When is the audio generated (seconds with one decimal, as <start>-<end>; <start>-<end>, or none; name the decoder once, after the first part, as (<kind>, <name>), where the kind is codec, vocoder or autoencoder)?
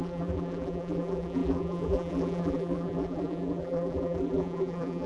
0.0-5.1 (vocoder, BigVGAN v2)